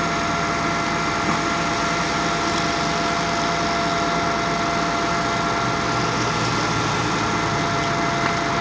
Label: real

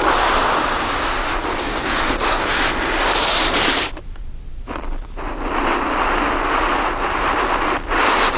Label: real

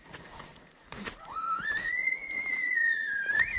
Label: fake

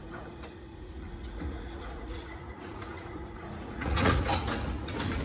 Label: fake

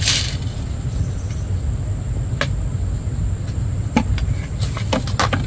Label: real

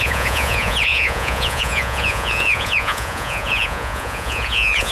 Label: fake